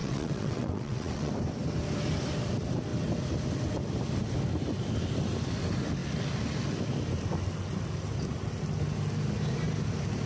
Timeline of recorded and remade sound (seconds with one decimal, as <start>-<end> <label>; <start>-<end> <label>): 0.0-1.3 remade; 1.3-10.3 recorded